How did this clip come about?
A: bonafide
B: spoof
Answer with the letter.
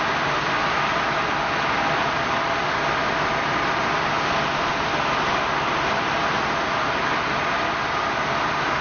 A